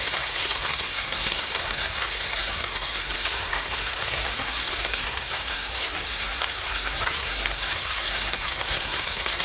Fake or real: fake